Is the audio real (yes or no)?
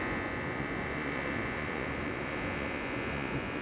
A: no